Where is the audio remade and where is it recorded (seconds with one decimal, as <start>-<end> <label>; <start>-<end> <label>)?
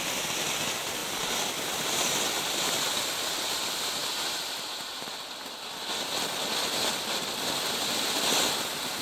0.0-9.0 recorded